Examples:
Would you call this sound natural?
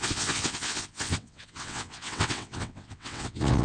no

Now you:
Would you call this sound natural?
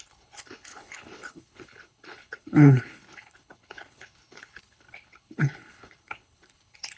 no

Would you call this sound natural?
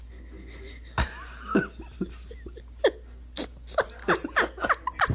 yes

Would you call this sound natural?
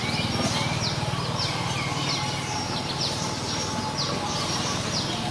yes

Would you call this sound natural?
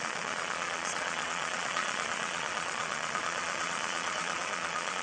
no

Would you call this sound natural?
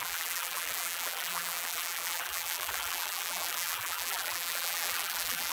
no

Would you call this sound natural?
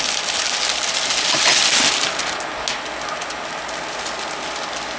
yes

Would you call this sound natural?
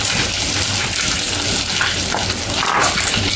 yes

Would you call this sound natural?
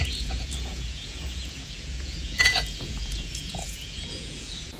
no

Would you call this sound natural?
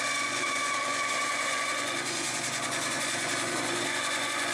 no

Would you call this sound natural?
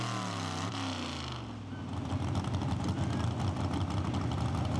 yes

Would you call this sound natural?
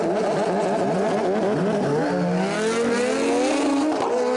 yes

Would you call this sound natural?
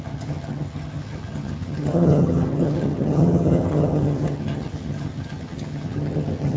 no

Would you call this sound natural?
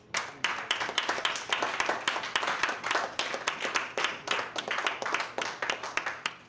no